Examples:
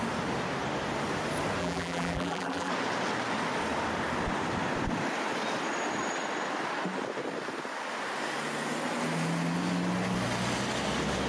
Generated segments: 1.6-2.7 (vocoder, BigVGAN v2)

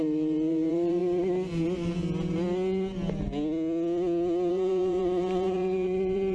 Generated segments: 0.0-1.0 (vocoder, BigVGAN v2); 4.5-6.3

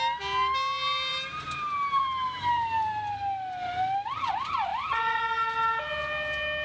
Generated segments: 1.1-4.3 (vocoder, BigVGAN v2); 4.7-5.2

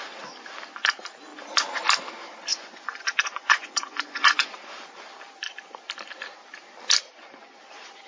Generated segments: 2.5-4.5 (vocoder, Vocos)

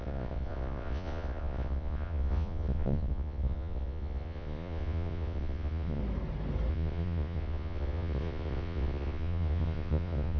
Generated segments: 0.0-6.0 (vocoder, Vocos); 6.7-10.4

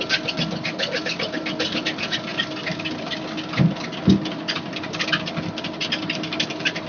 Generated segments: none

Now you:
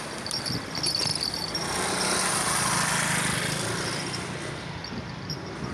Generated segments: none

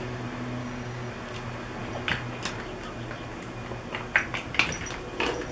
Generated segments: 0.6-1.1 (codec, DAC)